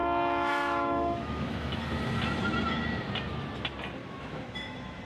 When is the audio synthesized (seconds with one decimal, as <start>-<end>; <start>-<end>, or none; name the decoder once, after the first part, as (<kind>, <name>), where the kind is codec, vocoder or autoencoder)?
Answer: 0.0-1.8 (autoencoder, DAC-VAE); 4.0-5.0